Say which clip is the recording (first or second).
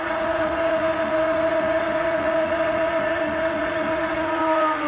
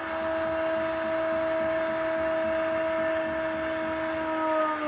second